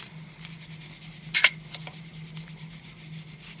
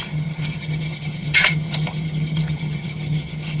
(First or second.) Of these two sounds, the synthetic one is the second